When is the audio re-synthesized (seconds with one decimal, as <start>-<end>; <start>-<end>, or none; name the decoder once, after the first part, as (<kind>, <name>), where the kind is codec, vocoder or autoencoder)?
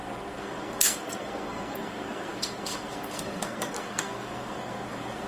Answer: 0.0-5.3 (codec, SNAC)